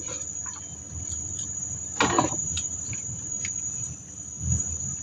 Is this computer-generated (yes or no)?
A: no